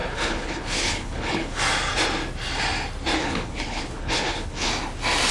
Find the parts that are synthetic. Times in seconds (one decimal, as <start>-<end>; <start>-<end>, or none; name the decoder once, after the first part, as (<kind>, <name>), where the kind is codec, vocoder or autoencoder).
0.0-1.6 (codec, HILCodec); 3.2-4.7